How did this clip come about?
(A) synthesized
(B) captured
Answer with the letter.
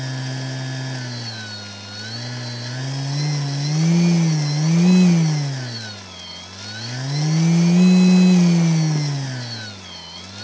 B